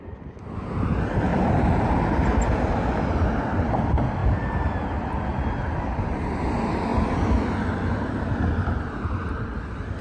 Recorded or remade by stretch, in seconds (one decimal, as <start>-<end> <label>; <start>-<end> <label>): 0.0-4.2 recorded; 4.2-5.6 remade; 5.6-6.9 recorded; 6.9-10.0 remade